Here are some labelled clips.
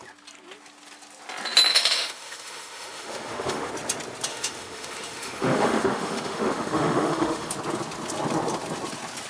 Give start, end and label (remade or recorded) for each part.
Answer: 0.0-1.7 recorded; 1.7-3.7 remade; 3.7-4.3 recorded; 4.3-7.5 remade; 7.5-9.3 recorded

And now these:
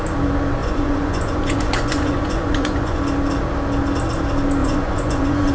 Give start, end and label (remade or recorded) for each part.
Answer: 0.0-0.6 recorded; 0.6-3.0 remade; 3.0-4.6 recorded; 4.6-5.5 remade

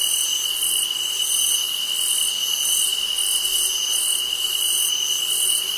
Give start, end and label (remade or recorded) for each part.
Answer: 0.0-5.8 recorded

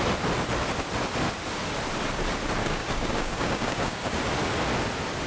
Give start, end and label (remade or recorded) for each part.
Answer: 0.0-2.6 recorded; 2.6-4.2 remade; 4.2-5.3 recorded